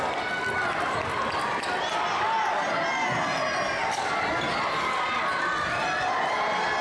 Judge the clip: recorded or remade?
recorded